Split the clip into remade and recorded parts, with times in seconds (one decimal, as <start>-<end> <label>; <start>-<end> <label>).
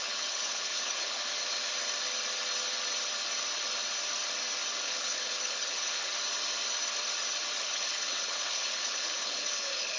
0.0-1.2 remade; 1.2-4.8 recorded; 4.8-6.1 remade; 6.1-7.6 recorded; 7.6-10.0 remade